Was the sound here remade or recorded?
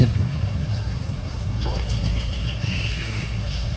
remade